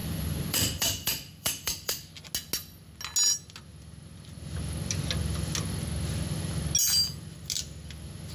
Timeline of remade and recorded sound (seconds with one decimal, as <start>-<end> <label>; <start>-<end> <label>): 0.0-2.1 remade; 2.1-8.3 recorded